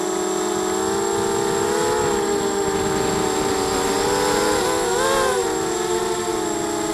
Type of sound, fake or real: real